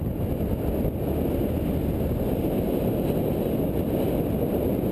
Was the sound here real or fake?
real